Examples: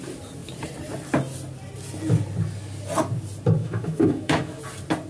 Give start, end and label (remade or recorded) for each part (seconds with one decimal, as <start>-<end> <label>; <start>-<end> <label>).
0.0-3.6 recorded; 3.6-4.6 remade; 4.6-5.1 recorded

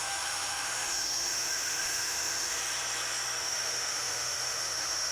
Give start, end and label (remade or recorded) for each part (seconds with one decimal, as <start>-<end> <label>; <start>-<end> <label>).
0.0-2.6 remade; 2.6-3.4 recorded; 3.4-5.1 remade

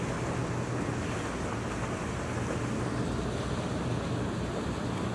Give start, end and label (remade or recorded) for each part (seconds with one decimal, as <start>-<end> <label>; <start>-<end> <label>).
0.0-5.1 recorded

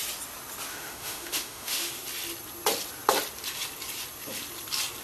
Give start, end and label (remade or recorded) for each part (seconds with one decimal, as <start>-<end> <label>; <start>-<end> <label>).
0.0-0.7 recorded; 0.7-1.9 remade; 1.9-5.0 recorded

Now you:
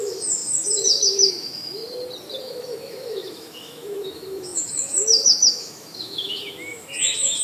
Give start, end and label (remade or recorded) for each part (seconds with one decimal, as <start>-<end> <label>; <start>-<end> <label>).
0.0-1.8 remade; 1.8-2.4 recorded; 2.4-7.4 remade